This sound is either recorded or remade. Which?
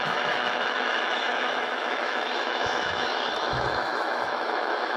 remade